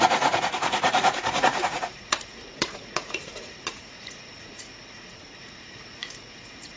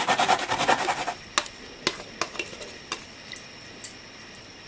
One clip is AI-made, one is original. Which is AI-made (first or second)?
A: first